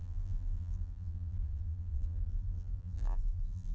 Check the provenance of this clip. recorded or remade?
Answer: remade